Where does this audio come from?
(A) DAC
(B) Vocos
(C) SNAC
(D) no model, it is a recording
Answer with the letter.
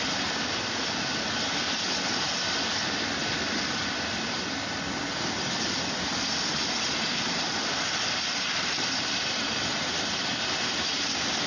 D